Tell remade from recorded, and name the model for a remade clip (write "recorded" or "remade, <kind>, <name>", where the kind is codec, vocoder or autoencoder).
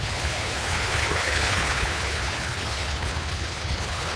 remade, codec, HILCodec